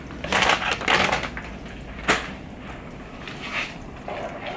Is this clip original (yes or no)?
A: yes